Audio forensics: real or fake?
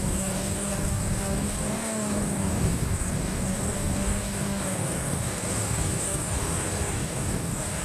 fake